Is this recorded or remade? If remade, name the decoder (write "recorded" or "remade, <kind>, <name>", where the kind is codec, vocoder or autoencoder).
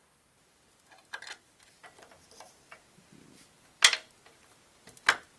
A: recorded